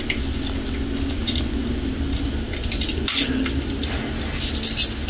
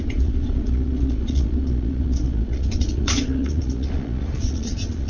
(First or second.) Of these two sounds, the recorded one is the first